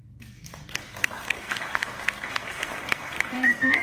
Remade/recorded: remade